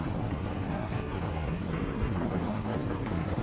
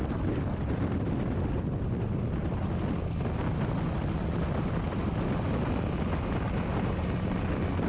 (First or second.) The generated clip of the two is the first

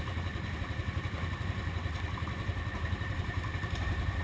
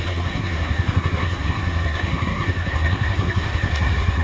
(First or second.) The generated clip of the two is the second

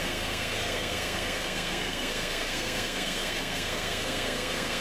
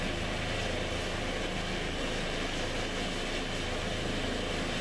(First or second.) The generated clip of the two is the first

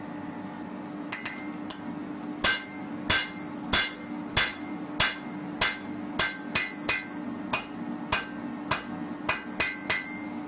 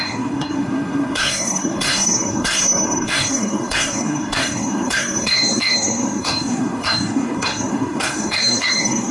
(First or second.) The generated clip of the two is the second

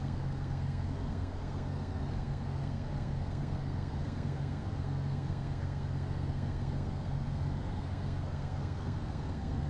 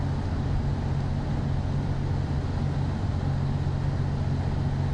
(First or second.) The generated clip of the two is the first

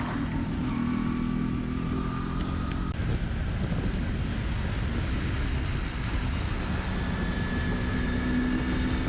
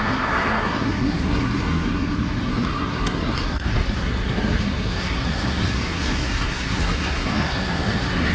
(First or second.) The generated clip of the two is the second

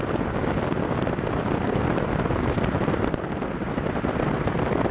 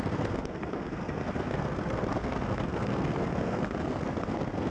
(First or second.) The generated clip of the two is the second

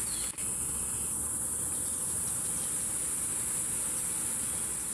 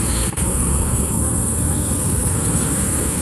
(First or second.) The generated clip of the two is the second